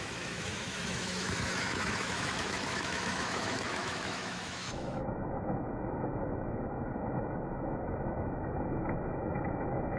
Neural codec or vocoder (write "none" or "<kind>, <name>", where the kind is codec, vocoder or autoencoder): autoencoder, DAC-VAE